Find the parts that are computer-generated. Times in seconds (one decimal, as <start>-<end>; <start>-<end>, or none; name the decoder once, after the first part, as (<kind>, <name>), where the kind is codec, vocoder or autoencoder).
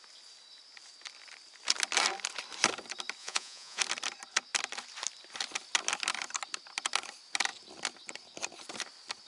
3.2-3.8 (vocoder, Vocos)